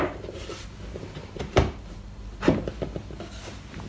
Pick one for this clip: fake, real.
real